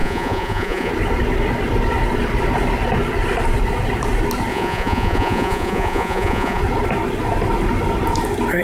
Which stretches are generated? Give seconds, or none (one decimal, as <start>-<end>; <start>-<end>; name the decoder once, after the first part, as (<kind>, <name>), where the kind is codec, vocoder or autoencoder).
0.0-0.9 (vocoder, Vocos); 4.5-6.6